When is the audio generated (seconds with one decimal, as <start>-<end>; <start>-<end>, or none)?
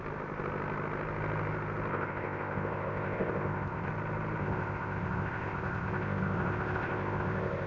1.9-3.9; 4.4-7.7